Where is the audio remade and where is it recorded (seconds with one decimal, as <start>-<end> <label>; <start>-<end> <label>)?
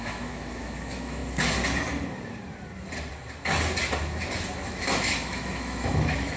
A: 0.0-1.2 remade; 1.2-4.7 recorded; 4.7-6.4 remade